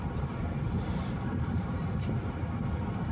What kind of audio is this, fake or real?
fake